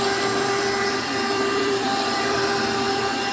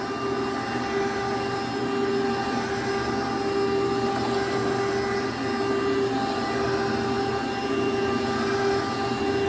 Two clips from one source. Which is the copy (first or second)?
first